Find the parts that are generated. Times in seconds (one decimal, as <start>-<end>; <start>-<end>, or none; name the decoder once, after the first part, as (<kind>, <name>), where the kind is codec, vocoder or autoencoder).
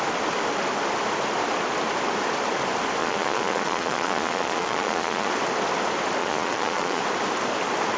3.0-5.3 (vocoder, Vocos); 6.2-7.0